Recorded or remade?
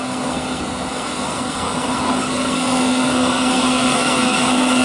remade